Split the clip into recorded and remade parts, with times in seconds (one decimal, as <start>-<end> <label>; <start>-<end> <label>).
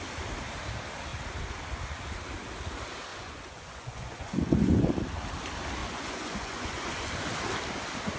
0.0-3.1 recorded; 3.1-4.9 remade; 4.9-5.8 recorded; 5.8-7.1 remade; 7.1-8.2 recorded